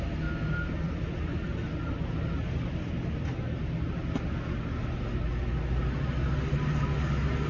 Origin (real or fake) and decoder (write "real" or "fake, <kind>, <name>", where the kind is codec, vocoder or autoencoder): real